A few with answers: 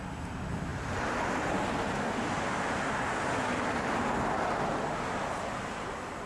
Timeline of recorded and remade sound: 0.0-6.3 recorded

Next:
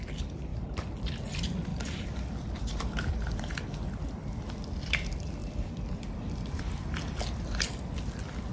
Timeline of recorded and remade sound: 0.0-1.7 recorded; 1.7-3.6 remade; 3.6-5.4 recorded; 5.4-6.6 remade; 6.6-8.5 recorded

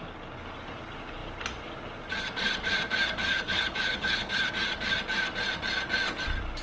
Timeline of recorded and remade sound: 0.0-3.3 recorded; 3.3-4.5 remade; 4.5-6.6 recorded